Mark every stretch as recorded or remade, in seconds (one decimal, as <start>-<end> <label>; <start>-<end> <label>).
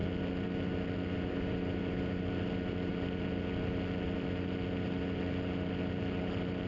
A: 0.0-6.7 recorded